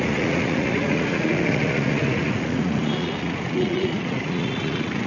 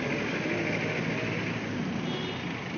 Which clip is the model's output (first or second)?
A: first